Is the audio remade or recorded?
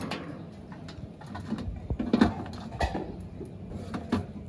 recorded